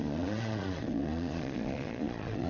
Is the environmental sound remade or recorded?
remade